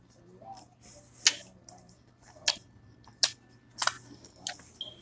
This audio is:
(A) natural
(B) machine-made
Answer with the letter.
A